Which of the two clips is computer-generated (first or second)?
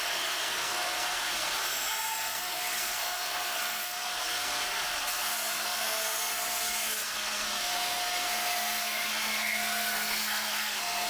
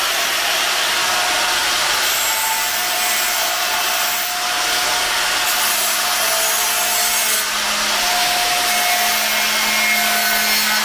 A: first